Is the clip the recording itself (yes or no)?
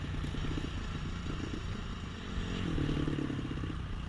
yes